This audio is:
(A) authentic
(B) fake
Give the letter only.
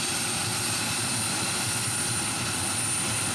A